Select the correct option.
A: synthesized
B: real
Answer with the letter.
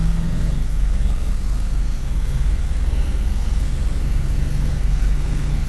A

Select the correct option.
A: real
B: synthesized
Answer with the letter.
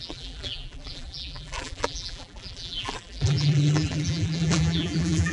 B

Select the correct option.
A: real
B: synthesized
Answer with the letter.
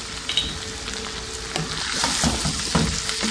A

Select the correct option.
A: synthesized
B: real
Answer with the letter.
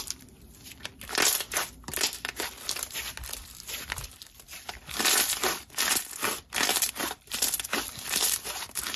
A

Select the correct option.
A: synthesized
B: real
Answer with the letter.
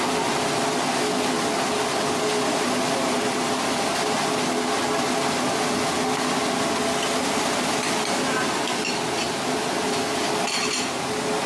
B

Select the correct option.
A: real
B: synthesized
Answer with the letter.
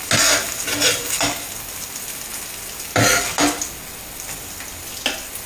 A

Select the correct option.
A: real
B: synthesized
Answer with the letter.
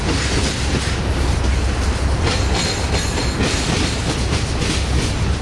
A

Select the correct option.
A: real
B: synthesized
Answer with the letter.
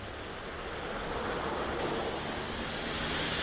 A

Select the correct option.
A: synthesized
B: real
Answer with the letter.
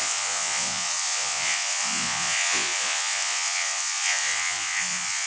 A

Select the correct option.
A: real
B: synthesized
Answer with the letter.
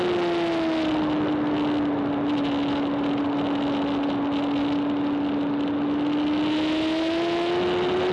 A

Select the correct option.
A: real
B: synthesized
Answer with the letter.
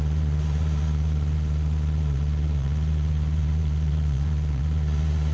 B